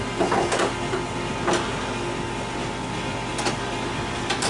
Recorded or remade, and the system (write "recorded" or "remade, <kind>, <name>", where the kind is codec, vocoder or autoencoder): recorded